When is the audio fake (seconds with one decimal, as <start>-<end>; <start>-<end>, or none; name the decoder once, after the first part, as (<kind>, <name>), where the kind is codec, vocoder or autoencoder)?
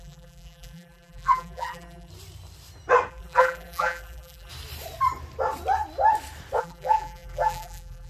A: 0.0-2.1 (vocoder, BigVGAN v2); 3.1-4.5; 6.6-8.1